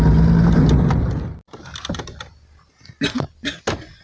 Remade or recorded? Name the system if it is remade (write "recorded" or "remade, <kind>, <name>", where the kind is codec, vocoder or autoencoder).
recorded